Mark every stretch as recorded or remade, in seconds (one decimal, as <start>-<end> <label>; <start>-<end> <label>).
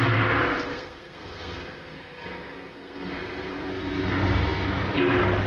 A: 0.0-0.7 recorded; 0.7-3.7 remade; 3.7-5.5 recorded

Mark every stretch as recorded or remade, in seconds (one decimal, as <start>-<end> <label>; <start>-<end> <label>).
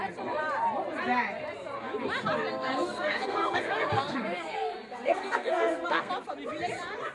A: 0.0-2.5 recorded; 2.5-6.1 remade; 6.1-7.1 recorded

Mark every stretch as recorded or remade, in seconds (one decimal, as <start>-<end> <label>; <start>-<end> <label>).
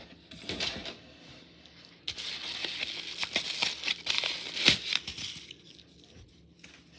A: 0.0-7.0 recorded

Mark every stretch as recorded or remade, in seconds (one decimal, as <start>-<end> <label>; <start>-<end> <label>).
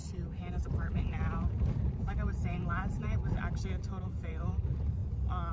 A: 0.0-3.4 remade; 3.4-4.0 recorded; 4.0-5.0 remade; 5.0-5.5 recorded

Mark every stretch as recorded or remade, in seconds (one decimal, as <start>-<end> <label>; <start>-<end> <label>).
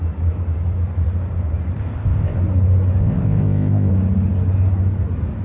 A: 0.0-1.8 recorded; 1.8-2.4 remade; 2.4-3.0 recorded; 3.0-3.9 remade; 3.9-5.4 recorded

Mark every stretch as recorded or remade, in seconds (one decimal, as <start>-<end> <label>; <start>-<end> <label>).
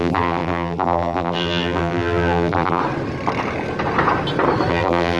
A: 0.0-2.8 remade; 2.8-4.7 recorded; 4.7-5.2 remade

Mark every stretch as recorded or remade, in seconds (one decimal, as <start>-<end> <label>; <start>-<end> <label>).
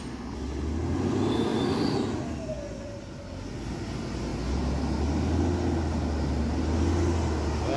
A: 0.0-7.8 recorded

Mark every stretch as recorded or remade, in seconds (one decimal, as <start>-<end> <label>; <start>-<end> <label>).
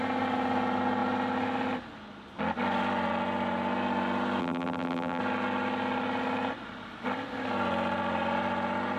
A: 0.0-4.4 recorded; 4.4-5.2 remade; 5.2-9.0 recorded